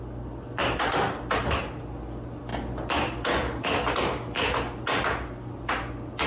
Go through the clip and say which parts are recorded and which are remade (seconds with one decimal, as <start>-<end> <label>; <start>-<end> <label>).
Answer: 0.0-6.3 recorded